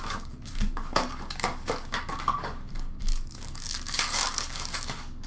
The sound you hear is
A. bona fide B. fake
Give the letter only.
B